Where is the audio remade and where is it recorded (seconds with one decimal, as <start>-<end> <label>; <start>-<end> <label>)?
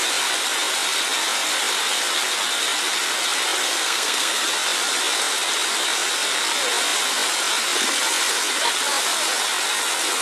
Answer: 0.0-3.6 recorded; 3.6-4.4 remade; 4.4-10.2 recorded